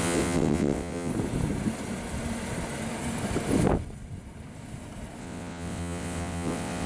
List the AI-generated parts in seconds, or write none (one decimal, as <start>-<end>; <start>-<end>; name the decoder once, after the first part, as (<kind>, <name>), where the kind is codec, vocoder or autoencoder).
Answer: 0.0-1.1 (vocoder, WaveNeXt); 5.2-6.9

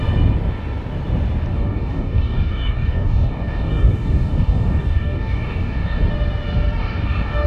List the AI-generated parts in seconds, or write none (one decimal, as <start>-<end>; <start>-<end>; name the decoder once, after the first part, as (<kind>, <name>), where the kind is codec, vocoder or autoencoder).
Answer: 1.5-6.0 (codec, DAC); 6.8-7.5

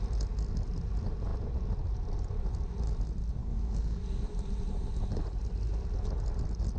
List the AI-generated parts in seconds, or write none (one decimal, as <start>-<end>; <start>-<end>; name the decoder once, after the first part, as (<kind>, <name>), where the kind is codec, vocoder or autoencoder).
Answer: 3.4-4.0 (codec, SNAC)